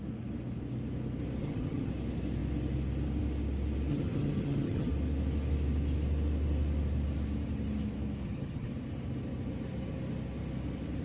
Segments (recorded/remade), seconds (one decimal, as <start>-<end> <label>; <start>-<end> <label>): 0.0-1.4 recorded; 1.4-1.9 remade; 1.9-3.9 recorded; 3.9-4.9 remade; 4.9-8.2 recorded; 8.2-8.7 remade; 8.7-11.0 recorded